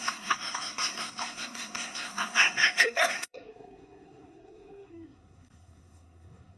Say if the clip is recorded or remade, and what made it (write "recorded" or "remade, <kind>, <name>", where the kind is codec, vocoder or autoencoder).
remade, codec, SNAC